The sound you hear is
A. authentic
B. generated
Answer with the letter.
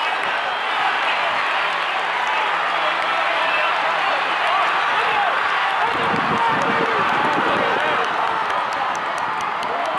A